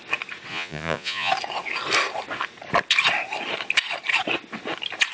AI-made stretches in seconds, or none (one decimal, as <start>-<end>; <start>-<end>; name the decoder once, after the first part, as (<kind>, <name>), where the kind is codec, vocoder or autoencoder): 0.5-1.3 (vocoder, Vocos)